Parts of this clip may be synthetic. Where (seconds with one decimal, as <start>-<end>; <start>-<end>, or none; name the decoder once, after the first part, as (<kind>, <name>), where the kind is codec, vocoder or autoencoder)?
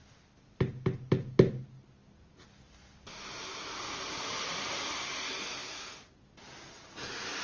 5.6-6.1 (autoencoder, DAC-VAE)